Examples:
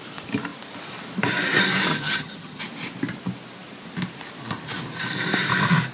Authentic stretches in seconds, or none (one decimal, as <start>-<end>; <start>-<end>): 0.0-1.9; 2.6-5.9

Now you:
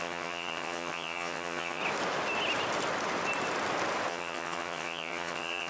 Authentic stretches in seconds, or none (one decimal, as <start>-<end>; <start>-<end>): 1.8-4.1

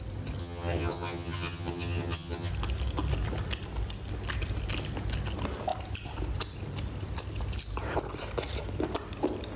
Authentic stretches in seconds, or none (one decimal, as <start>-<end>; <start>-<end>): 0.0-0.4; 2.5-9.6

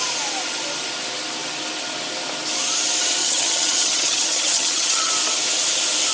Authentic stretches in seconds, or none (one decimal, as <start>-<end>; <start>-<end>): 0.0-3.2; 5.1-6.1

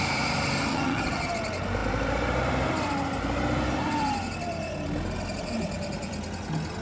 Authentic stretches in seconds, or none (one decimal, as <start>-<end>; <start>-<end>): 0.0-0.7; 1.3-6.8